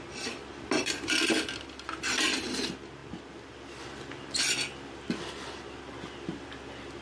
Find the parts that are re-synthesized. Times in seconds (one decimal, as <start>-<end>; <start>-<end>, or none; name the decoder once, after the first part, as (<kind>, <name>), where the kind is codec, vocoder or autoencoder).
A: none